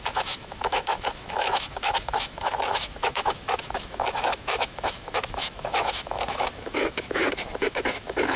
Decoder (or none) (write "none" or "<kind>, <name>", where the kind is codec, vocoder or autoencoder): autoencoder, DAC-VAE